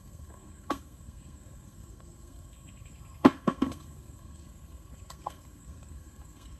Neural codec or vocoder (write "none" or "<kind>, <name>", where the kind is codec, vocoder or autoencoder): codec, SNAC